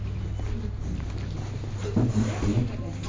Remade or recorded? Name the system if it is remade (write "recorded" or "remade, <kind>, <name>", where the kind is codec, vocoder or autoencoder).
recorded